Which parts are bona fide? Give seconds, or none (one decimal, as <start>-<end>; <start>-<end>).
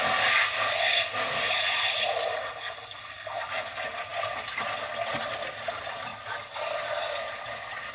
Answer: 0.0-7.9